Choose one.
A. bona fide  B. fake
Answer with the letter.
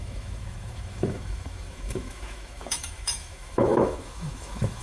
B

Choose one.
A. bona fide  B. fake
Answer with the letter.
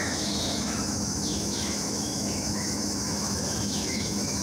B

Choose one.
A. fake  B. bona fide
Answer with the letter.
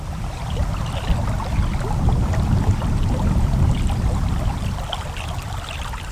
B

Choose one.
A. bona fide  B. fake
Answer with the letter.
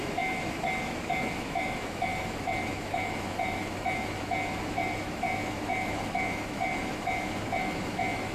B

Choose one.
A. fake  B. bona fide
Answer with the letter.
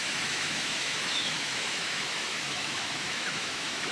A